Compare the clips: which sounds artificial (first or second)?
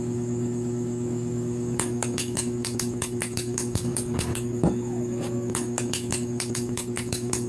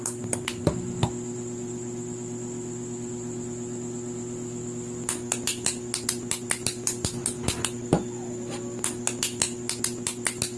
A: first